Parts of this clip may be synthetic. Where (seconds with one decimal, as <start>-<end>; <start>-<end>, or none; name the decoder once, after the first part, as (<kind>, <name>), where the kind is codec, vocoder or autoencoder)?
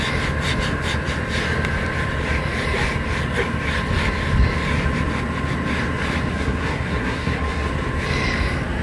6.3-7.7 (codec, SNAC)